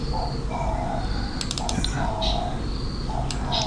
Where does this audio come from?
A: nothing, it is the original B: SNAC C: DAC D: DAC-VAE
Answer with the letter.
A